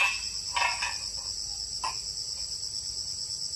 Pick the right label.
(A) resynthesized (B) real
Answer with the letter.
B